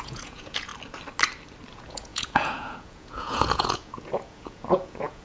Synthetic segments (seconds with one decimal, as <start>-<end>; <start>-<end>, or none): 0.0-0.7; 1.7-5.2